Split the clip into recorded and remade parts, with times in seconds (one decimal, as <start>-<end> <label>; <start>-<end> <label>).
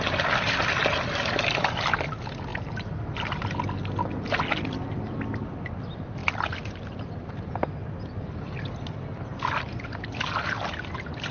0.0-11.3 recorded